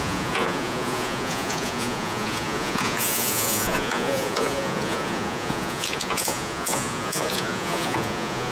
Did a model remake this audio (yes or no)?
yes